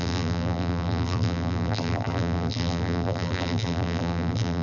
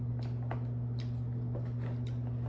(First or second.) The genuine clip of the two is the second